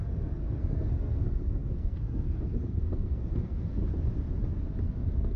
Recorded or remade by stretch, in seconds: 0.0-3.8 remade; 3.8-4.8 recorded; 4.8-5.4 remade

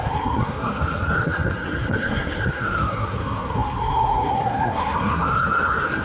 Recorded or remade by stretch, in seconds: 0.0-6.0 remade